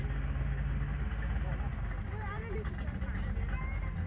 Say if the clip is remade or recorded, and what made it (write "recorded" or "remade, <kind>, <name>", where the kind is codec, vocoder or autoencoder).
recorded